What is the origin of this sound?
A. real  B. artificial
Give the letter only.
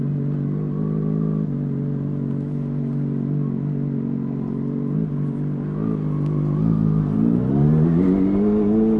A